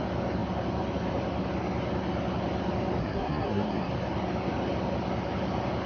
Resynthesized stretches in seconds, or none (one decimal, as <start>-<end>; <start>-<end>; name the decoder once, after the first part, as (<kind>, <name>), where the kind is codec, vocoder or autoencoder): 3.0-3.9 (codec, SNAC)